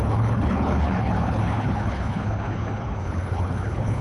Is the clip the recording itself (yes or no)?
no